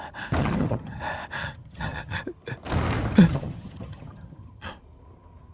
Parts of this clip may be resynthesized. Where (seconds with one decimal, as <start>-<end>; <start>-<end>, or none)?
0.4-1.0; 1.4-2.2; 3.3-4.7